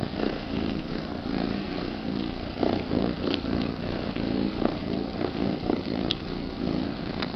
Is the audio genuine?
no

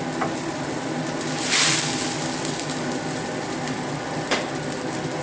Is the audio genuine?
yes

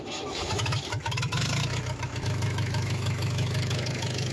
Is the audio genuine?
no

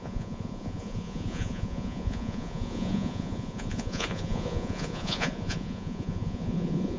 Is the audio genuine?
no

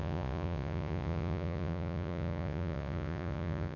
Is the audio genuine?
no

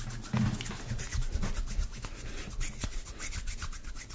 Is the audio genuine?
yes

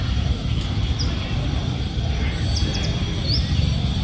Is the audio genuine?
yes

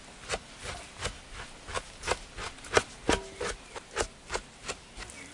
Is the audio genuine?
yes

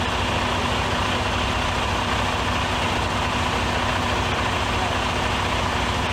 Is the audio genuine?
yes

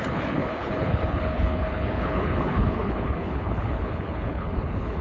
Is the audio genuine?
no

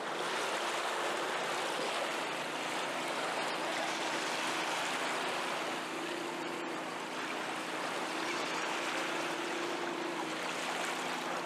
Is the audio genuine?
yes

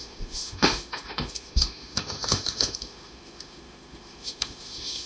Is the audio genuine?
no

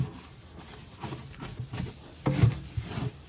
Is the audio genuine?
yes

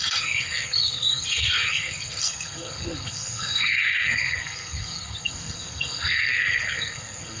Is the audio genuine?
no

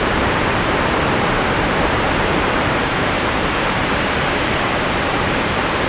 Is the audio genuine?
no